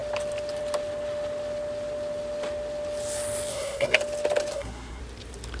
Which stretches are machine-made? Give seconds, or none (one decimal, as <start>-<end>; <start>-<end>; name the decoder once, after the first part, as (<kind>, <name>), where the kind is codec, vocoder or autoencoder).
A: 3.5-4.0 (codec, SNAC); 4.5-5.0